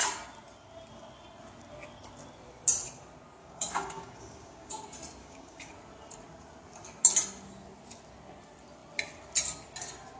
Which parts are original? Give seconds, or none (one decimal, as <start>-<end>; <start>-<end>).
0.0-3.4; 4.7-5.2; 5.7-10.2